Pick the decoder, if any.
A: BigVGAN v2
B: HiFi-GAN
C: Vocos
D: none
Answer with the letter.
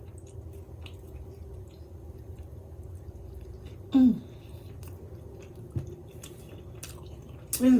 D